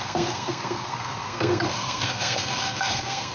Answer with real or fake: fake